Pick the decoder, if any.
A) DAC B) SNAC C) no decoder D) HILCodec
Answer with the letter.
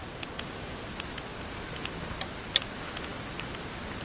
C